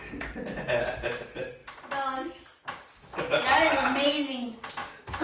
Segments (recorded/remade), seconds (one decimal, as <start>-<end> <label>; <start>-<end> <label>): 0.0-5.2 recorded